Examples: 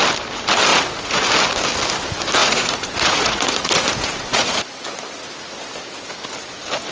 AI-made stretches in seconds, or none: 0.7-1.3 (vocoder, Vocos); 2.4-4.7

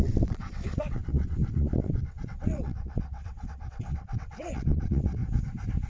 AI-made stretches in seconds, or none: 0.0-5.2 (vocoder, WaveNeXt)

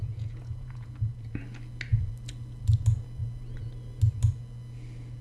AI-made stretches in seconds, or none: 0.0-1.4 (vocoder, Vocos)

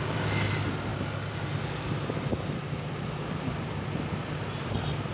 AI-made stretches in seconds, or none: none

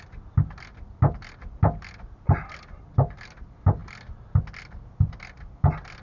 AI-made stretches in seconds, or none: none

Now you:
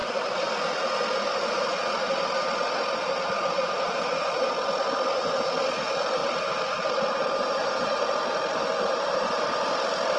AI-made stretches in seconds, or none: 0.0-0.5 (vocoder, BigVGAN v2); 3.0-4.5; 6.2-10.2

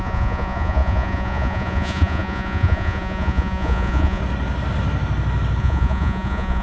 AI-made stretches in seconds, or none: 0.0-4.2 (vocoder, Vocos); 5.6-6.6